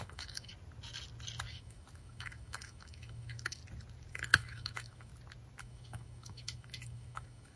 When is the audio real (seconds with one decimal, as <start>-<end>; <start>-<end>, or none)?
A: 0.5-1.5; 3.6-4.1; 5.1-5.6